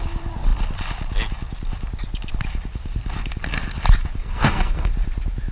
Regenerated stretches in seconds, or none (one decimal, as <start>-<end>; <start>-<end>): 4.2-4.9